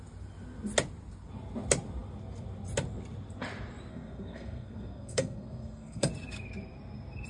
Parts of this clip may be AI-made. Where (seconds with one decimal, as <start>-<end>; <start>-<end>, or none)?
3.9-6.1